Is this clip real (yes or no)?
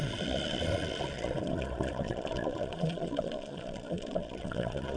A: no